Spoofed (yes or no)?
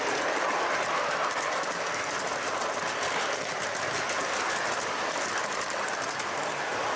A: no